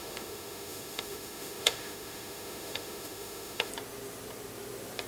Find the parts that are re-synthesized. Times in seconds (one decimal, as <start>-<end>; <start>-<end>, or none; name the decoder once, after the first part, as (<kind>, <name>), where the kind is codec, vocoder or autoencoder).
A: 0.0-3.7 (autoencoder, DAC-VAE)